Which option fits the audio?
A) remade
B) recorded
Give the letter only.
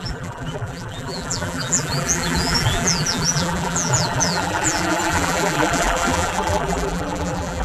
A